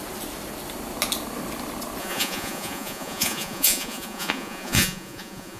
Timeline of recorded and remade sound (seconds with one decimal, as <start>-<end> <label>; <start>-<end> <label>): 0.0-2.0 recorded; 2.0-5.6 remade